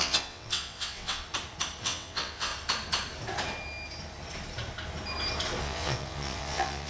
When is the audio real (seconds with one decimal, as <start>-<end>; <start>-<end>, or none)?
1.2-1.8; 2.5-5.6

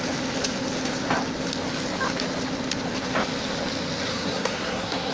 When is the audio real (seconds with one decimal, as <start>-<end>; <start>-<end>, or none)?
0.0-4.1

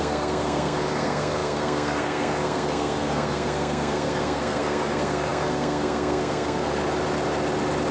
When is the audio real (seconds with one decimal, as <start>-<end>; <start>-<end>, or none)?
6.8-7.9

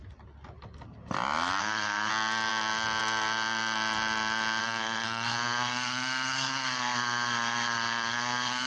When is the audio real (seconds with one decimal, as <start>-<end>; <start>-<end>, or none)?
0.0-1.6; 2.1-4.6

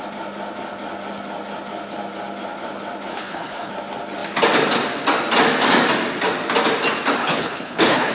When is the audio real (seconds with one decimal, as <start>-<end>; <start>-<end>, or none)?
0.0-3.1; 3.7-7.2

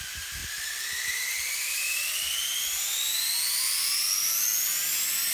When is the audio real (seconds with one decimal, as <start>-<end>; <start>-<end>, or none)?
0.4-1.1; 2.5-5.3